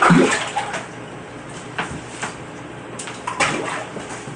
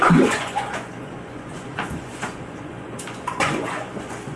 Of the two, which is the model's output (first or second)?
second